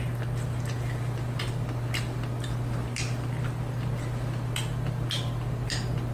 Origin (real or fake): fake